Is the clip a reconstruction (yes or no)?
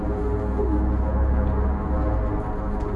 no